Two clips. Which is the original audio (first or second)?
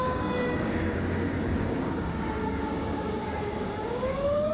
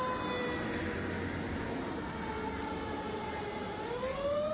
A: second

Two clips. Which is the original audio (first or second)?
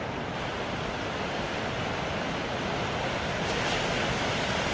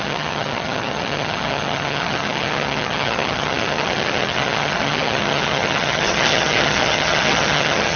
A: first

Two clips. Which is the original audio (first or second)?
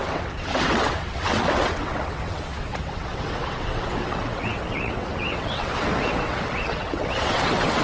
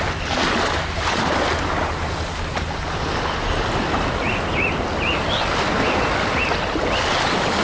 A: second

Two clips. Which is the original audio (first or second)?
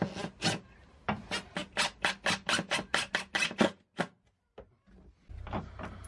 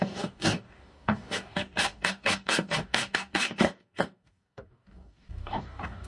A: first